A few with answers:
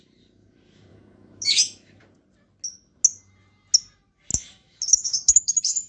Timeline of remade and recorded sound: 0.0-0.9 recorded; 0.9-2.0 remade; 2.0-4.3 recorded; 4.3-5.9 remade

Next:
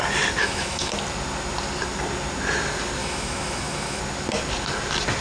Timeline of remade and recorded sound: 0.0-0.4 recorded; 0.4-0.9 remade; 0.9-3.0 recorded; 3.0-4.0 remade; 4.0-5.2 recorded

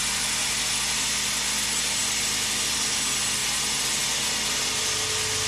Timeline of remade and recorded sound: 0.0-5.5 recorded

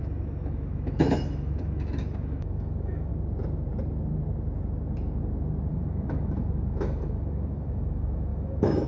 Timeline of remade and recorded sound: 0.0-3.1 remade; 3.1-5.7 recorded; 5.7-8.9 remade

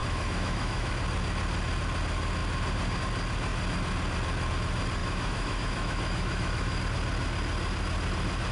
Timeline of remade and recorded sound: 0.0-0.9 remade; 0.9-5.0 recorded; 5.0-6.8 remade; 6.8-8.5 recorded